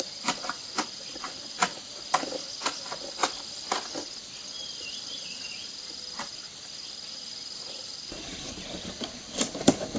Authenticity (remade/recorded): remade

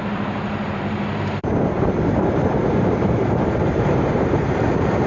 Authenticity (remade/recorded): remade